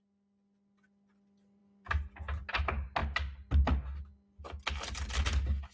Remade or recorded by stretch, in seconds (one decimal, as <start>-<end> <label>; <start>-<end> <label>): 0.0-5.7 recorded